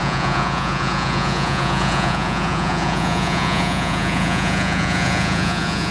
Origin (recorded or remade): remade